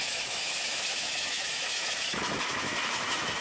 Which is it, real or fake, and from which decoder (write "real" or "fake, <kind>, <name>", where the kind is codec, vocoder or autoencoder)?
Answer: fake, autoencoder, DAC-VAE